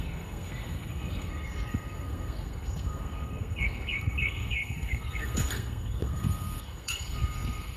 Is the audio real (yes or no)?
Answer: no